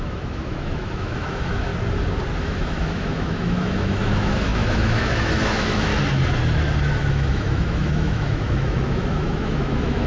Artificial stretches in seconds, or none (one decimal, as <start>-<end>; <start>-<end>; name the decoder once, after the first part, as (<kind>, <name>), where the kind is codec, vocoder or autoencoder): 0.0-1.7 (autoencoder, DAC-VAE); 2.4-5.9; 7.1-10.1